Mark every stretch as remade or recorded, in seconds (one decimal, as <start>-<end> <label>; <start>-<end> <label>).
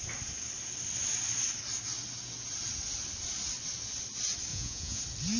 0.0-4.5 recorded; 4.5-5.0 remade; 5.0-5.4 recorded